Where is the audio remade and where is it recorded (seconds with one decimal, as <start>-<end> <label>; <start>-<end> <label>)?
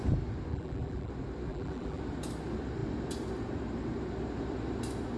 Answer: 0.0-0.5 recorded; 0.5-1.1 remade; 1.1-1.5 recorded; 1.5-2.0 remade; 2.0-5.2 recorded